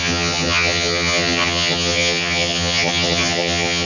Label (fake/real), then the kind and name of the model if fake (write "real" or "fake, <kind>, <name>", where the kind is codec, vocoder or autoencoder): fake, vocoder, HiFi-GAN